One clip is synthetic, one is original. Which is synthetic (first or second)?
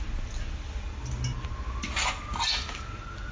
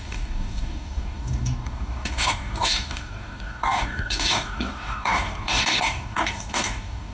second